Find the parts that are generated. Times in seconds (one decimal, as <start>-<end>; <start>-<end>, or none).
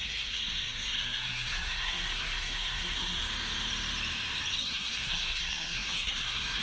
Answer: 0.0-3.2; 4.6-6.6